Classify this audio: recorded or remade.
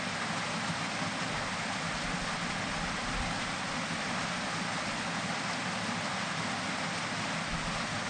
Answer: recorded